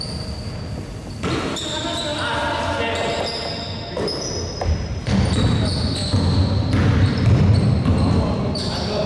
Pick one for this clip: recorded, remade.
recorded